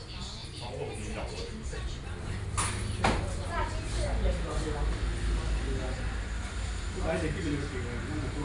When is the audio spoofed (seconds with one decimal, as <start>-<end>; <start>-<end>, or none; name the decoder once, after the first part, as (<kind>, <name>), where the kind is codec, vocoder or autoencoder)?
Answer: none